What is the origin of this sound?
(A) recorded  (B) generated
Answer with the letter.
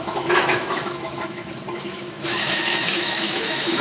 B